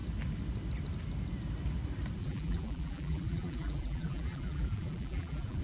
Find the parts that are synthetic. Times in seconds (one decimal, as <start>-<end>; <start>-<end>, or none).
2.2-5.6